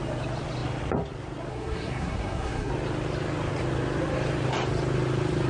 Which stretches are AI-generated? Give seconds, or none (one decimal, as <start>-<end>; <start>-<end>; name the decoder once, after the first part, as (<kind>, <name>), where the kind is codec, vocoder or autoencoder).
1.5-2.7 (codec, SNAC)